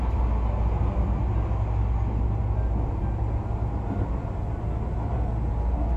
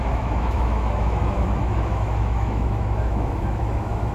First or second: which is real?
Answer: first